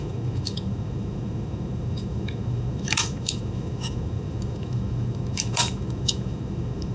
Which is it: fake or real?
fake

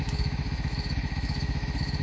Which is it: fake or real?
fake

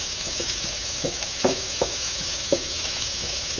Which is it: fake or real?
fake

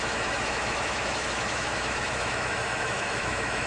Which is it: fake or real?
fake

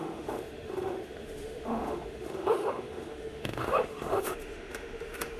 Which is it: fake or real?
fake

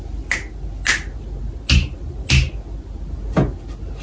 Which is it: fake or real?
real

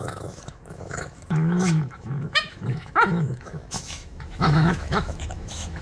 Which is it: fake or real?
fake